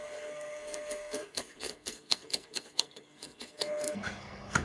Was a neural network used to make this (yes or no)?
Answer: yes